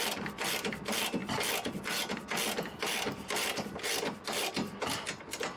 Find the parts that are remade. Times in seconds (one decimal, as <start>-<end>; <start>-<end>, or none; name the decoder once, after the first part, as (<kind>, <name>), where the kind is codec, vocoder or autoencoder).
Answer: none